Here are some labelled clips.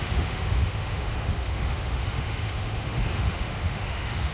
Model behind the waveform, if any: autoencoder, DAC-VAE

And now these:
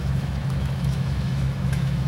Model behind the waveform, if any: autoencoder, DAC-VAE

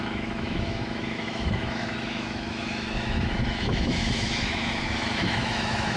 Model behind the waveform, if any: autoencoder, DAC-VAE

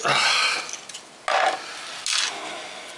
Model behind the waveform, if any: none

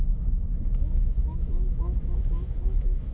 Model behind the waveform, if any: autoencoder, DAC-VAE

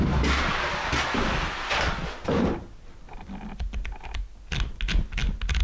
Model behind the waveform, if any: none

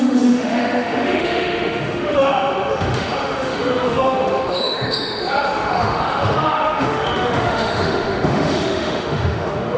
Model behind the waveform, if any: autoencoder, DAC-VAE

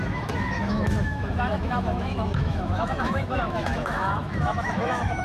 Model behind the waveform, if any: autoencoder, DAC-VAE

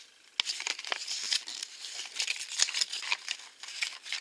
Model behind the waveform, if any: none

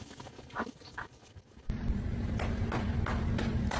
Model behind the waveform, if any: none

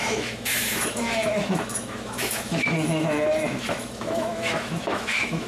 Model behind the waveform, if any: autoencoder, DAC-VAE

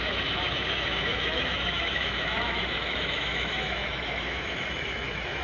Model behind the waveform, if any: autoencoder, DAC-VAE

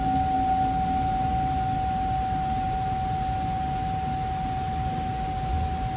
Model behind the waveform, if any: none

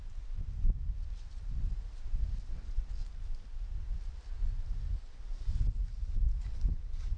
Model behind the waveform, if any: none